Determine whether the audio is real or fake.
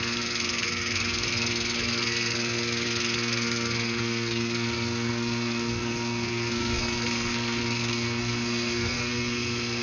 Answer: fake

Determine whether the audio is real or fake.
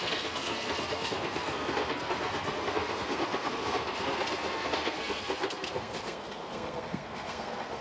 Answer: fake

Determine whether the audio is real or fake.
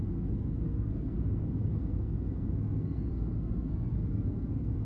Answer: fake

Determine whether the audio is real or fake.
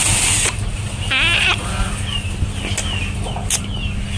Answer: real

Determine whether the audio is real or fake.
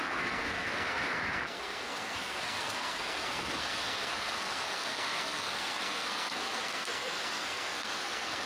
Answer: fake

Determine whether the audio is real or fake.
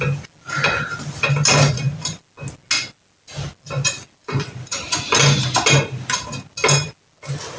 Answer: real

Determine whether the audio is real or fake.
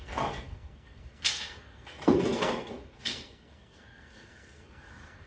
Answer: fake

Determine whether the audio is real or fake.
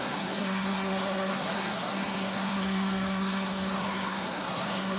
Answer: fake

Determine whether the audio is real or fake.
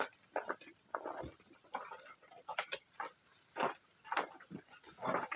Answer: real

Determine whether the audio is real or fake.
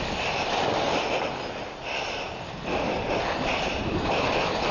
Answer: real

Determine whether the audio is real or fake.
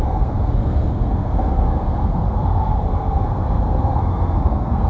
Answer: fake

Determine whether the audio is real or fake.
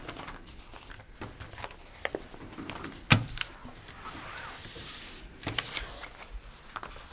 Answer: real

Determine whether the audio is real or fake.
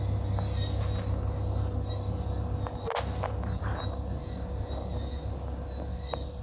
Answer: real